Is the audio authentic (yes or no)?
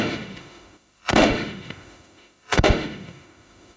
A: no